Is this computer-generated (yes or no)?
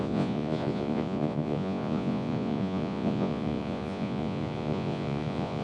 yes